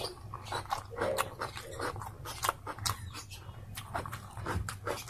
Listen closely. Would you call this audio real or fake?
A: real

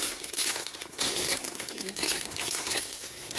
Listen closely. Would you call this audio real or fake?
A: fake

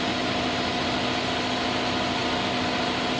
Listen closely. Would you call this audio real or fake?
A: real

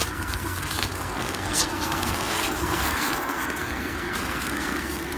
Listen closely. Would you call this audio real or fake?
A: fake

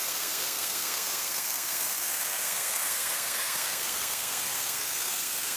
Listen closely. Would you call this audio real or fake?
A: fake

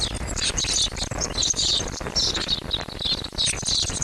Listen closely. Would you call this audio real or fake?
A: real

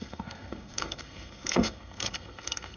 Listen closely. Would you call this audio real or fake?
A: fake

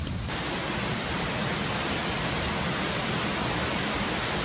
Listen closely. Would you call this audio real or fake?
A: real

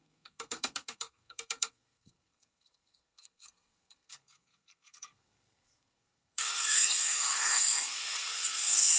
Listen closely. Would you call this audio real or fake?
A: fake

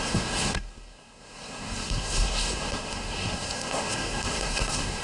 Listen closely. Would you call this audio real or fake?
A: fake